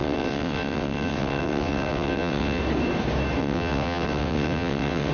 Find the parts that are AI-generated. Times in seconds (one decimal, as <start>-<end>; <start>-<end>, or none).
0.0-2.6; 3.4-5.1